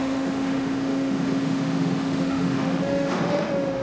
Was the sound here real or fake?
fake